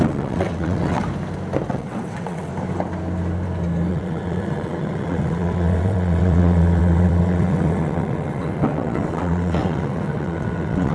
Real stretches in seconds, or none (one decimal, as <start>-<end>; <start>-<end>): 1.0-1.7; 2.5-3.9